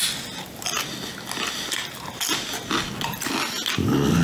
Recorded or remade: recorded